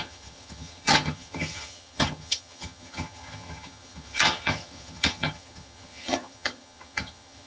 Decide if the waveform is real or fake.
fake